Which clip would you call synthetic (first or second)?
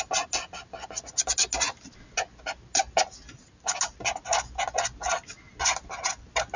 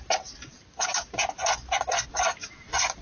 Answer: second